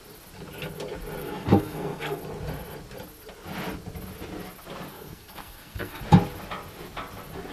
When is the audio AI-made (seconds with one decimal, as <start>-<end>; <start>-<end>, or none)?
1.2-2.2; 4.9-6.0